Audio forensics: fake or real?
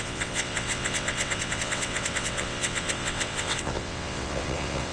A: fake